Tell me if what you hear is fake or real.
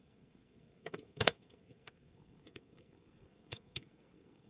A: fake